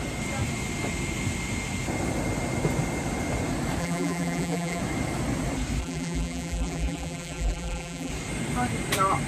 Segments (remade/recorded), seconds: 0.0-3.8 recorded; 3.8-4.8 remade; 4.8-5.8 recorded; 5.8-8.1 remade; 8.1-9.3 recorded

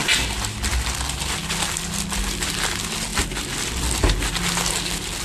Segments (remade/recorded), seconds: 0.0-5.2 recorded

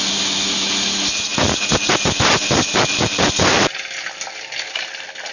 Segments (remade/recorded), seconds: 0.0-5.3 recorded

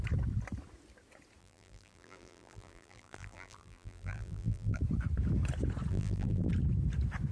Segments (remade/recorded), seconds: 0.0-1.4 recorded; 1.4-4.8 remade; 4.8-5.9 recorded; 5.9-6.5 remade; 6.5-7.3 recorded

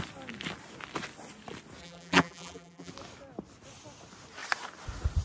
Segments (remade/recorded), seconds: 0.0-1.8 recorded; 1.8-2.9 remade; 2.9-5.2 recorded

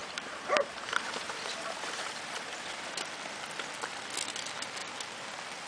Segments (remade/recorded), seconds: 0.0-3.0 remade; 3.0-5.7 recorded

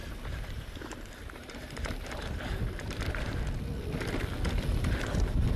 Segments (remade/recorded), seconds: 0.0-3.4 remade; 3.4-4.7 recorded; 4.7-5.6 remade

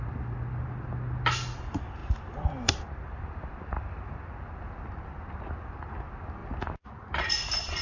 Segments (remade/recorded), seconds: 0.0-2.0 recorded; 2.0-4.2 remade; 4.2-7.8 recorded